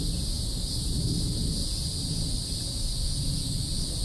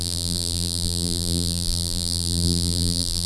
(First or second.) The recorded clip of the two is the first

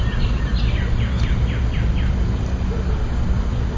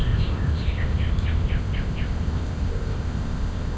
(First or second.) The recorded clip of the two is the first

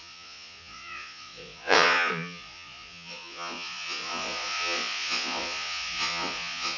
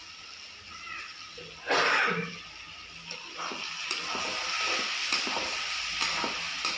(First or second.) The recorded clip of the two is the second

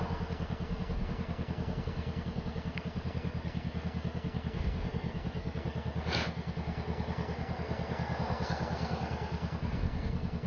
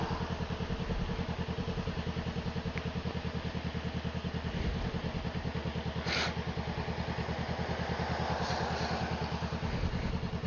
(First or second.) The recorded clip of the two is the second